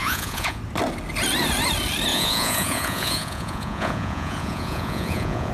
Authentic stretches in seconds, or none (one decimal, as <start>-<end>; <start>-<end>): 0.6-2.1